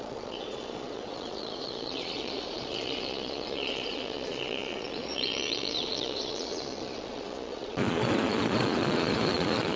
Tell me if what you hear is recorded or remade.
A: remade